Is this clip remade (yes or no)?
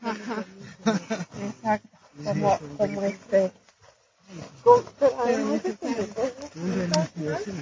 no